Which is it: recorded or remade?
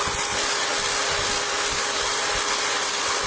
recorded